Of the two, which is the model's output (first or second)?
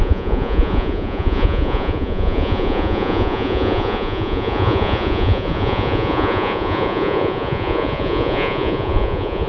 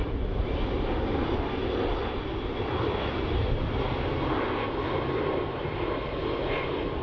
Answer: first